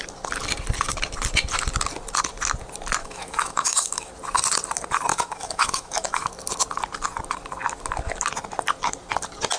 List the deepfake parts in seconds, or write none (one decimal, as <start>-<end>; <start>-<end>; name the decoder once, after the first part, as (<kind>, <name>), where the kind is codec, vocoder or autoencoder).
3.0-4.1 (autoencoder, DAC-VAE); 5.1-6.3